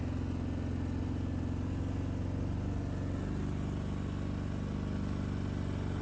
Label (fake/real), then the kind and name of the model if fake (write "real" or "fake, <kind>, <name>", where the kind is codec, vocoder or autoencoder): real